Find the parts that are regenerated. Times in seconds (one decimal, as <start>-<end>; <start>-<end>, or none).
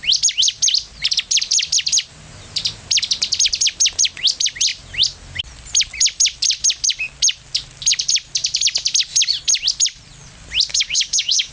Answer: 10.7-11.5